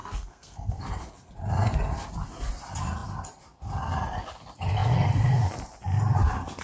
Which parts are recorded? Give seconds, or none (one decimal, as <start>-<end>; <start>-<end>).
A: 0.8-6.6